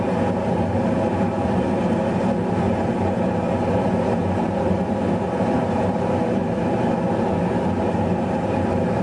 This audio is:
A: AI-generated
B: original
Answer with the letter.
B